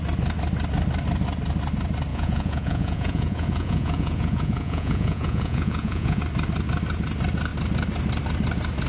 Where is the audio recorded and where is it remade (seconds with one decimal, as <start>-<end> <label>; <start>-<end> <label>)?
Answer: 0.0-2.1 recorded; 2.1-6.2 remade; 6.2-8.9 recorded